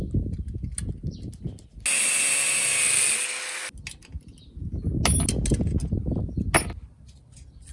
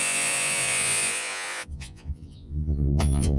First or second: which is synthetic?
second